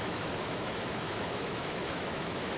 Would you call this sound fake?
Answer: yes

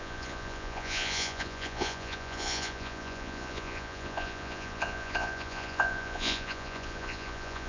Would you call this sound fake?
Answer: yes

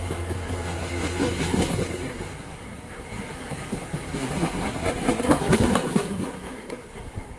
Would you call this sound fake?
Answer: yes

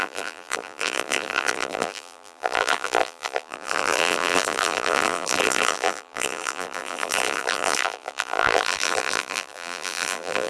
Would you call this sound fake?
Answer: yes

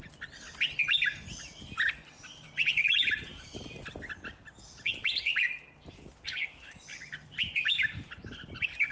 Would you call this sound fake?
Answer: yes